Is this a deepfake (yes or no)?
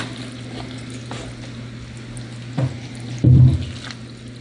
no